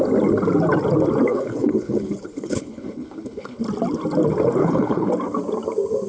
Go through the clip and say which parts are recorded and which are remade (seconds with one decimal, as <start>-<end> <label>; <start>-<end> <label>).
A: 0.0-1.3 recorded; 1.3-3.6 remade; 3.6-4.6 recorded; 4.6-5.1 remade; 5.1-6.1 recorded